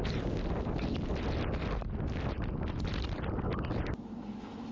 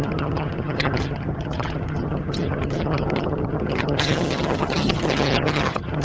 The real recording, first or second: first